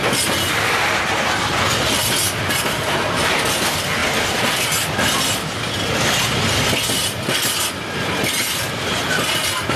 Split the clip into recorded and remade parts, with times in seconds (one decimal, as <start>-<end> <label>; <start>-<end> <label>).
0.0-9.8 recorded